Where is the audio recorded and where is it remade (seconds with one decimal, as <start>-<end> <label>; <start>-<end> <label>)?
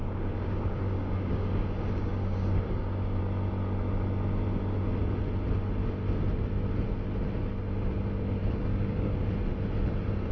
0.0-3.2 remade; 3.2-8.4 recorded; 8.4-9.2 remade; 9.2-10.3 recorded